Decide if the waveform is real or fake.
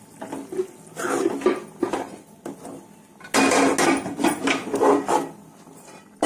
real